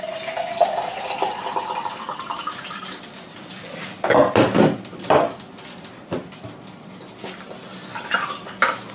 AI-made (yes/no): no